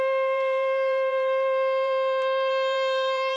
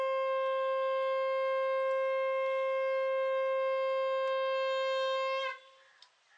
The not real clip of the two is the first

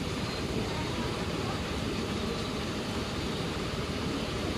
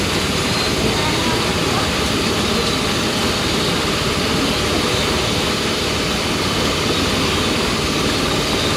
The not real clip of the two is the first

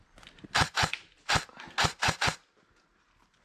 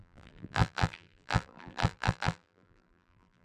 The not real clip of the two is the second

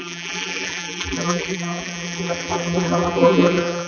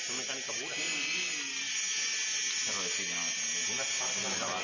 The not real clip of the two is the first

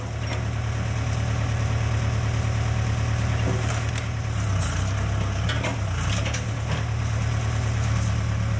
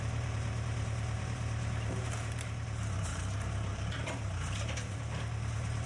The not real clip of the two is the second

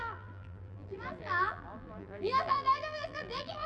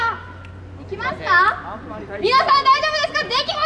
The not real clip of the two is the first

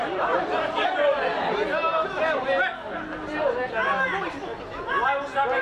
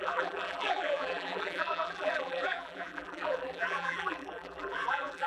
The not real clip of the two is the second